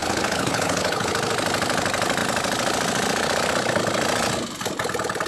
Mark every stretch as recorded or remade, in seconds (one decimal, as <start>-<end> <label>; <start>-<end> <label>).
0.0-1.1 remade; 1.1-5.3 recorded